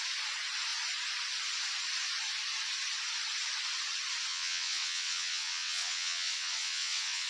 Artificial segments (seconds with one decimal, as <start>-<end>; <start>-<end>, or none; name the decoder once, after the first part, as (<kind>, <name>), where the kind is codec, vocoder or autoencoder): 4.3-7.3 (vocoder, WaveNeXt)